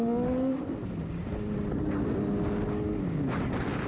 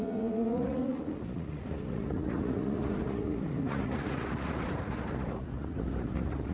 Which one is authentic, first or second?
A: first